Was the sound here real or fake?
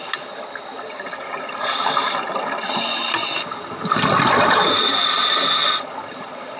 real